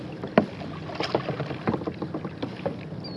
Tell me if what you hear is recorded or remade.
recorded